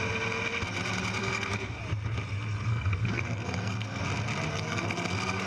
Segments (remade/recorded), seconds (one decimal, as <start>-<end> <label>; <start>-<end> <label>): 0.0-1.2 recorded; 1.2-1.8 remade; 1.8-2.7 recorded; 2.7-4.0 remade; 4.0-4.5 recorded; 4.5-5.5 remade